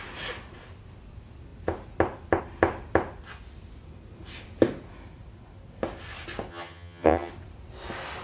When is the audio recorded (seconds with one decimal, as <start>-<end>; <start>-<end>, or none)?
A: 0.0-6.5; 7.3-8.2